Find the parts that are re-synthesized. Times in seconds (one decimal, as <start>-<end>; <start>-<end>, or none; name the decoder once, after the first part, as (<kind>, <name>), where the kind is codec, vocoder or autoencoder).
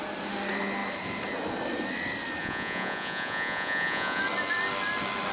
2.4-4.2 (vocoder, Vocos)